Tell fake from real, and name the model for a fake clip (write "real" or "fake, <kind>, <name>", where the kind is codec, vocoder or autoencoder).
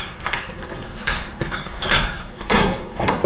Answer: fake, codec, SNAC